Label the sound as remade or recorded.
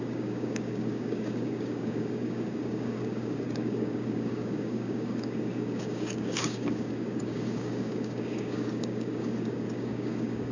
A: remade